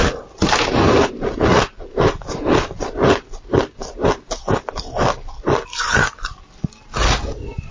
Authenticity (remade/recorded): recorded